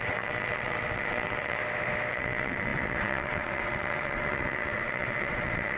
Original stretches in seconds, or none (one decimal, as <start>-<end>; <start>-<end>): 1.6-2.1